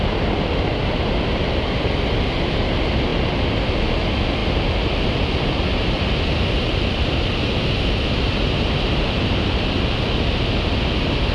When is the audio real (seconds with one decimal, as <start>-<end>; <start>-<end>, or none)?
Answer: 0.0-11.3